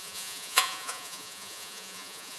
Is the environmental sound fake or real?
fake